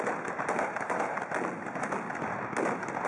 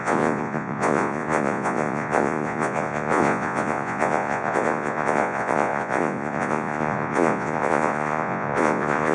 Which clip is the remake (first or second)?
second